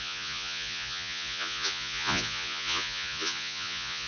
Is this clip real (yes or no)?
no